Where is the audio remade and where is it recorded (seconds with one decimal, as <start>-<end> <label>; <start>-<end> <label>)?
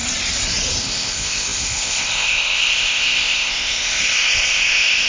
0.0-0.8 recorded; 0.8-5.1 remade